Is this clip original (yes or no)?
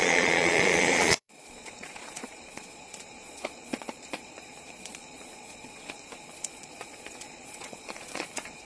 no